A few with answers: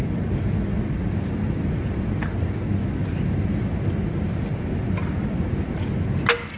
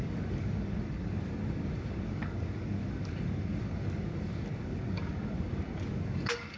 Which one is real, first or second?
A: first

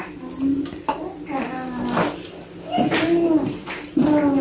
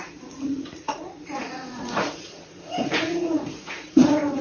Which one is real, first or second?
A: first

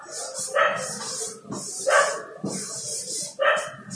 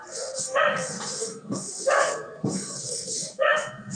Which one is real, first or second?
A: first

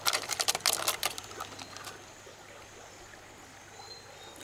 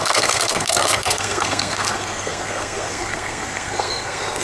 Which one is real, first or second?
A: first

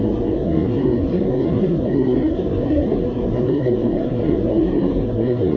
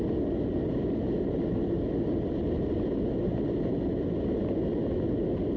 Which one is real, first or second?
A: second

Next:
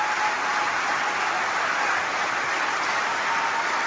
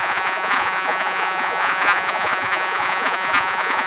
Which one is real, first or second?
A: first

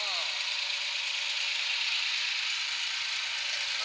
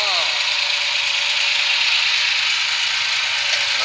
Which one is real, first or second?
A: second